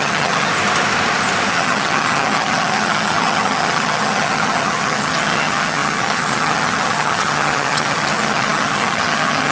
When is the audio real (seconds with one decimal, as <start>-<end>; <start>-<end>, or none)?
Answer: 0.5-1.5